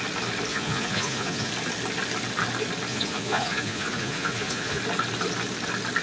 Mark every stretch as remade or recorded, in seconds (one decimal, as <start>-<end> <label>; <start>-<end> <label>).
0.0-0.5 recorded; 0.5-1.5 remade; 1.5-2.9 recorded; 2.9-4.8 remade; 4.8-6.0 recorded